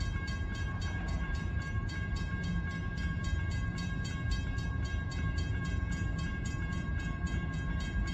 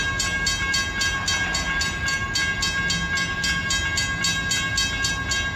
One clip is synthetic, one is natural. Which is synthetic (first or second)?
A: first